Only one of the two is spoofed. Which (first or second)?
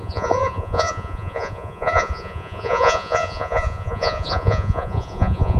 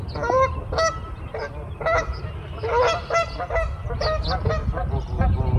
first